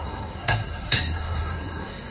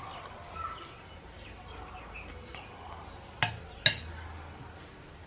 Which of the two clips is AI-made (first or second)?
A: first